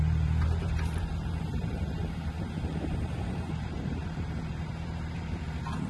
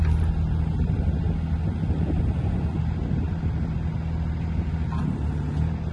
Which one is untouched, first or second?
second